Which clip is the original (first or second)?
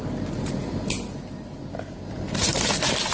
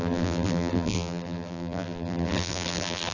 first